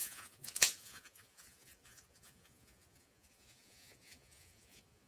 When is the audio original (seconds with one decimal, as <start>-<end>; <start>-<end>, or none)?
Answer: none